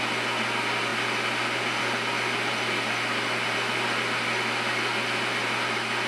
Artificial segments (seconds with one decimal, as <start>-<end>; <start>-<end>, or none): none